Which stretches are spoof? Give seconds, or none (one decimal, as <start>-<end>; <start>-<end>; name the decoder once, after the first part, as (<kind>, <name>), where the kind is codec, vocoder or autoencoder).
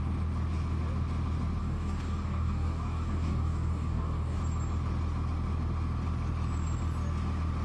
1.6-4.4 (codec, DAC)